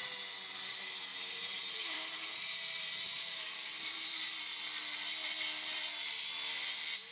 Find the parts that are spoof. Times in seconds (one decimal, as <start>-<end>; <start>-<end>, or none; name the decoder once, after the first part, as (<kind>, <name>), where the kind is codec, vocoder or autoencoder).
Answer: 1.1-4.6 (vocoder, BigVGAN v2)